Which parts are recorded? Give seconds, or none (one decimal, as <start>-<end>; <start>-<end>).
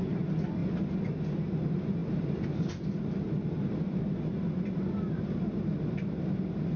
0.0-6.8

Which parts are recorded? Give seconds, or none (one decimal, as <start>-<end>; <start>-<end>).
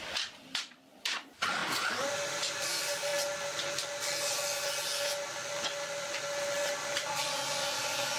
1.6-2.5; 3.1-7.3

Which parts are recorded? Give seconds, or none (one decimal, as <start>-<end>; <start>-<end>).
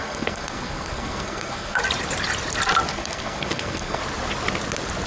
1.8-2.9; 4.0-5.1